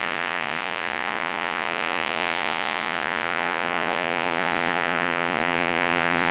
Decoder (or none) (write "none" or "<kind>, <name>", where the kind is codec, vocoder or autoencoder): vocoder, Vocos